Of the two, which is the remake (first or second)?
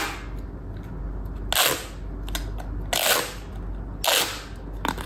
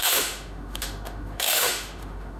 second